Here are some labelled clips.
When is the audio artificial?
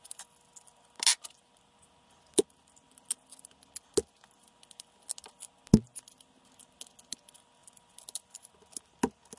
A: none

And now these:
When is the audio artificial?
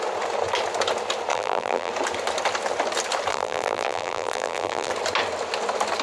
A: 1.3-1.9 (vocoder, BigVGAN v2); 3.3-4.9